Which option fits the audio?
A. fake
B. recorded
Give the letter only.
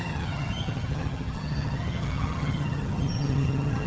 A